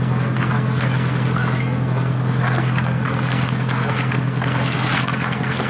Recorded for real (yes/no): no